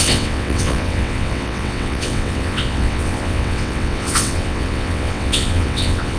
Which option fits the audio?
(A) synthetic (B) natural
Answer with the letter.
A